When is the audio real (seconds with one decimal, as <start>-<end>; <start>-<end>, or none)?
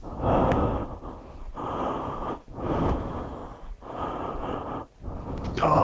0.8-2.0; 3.4-5.3